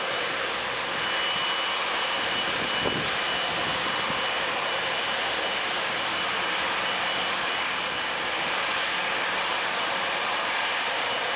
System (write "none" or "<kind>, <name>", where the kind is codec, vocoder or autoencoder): none